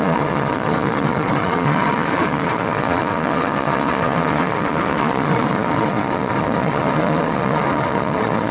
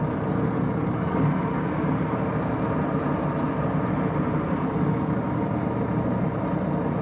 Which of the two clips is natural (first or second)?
second